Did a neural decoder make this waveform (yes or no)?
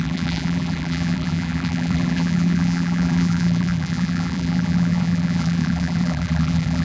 yes